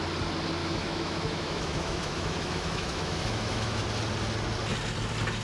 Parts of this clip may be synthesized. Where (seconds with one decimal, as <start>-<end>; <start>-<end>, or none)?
0.6-3.8